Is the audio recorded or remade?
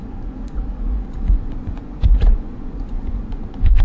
remade